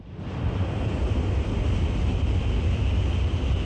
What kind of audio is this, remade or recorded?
recorded